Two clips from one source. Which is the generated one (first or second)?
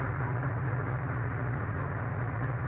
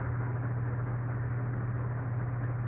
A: first